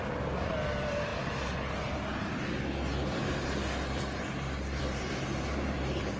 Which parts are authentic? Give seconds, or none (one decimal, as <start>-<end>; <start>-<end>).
1.1-4.8